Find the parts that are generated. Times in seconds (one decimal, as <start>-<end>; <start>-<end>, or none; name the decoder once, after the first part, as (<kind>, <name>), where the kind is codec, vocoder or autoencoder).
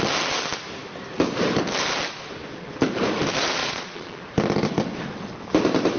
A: 3.6-4.2 (vocoder, Vocos)